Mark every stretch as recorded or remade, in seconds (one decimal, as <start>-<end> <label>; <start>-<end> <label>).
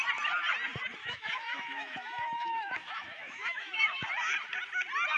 0.0-1.0 recorded; 1.0-4.1 remade; 4.1-5.2 recorded